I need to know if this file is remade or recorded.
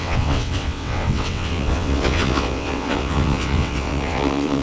remade